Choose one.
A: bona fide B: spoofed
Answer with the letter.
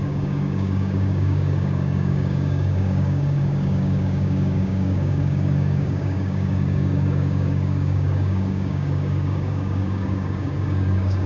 B